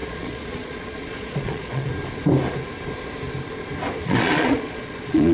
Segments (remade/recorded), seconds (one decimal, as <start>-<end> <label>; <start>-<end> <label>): 0.0-1.9 remade; 1.9-4.0 recorded; 4.0-5.3 remade